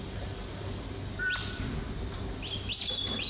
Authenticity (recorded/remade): recorded